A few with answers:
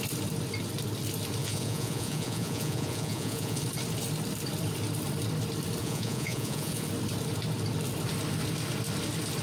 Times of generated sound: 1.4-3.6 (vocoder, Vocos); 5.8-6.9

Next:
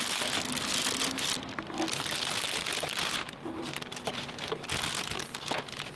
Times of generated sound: none

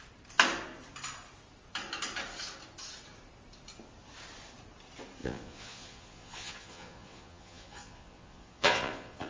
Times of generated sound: 5.2-9.3 (vocoder, Vocos)

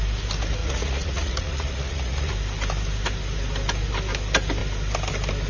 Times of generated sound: 0.6-2.3 (vocoder, Vocos)

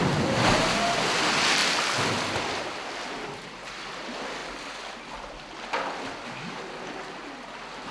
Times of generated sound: none

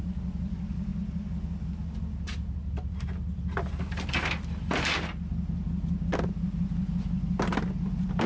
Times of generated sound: none

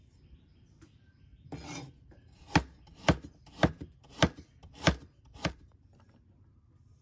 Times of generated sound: none